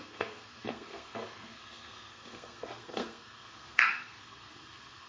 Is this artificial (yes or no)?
yes